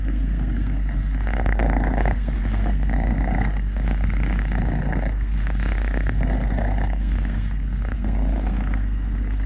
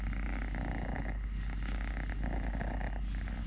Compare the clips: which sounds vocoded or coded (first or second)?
first